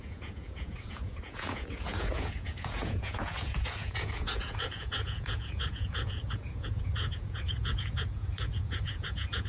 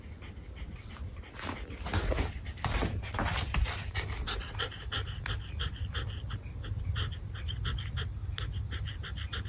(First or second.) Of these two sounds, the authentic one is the second